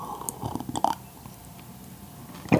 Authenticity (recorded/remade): recorded